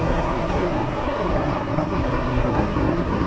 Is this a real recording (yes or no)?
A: no